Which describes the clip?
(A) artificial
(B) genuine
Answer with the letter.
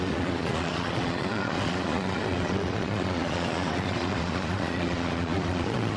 A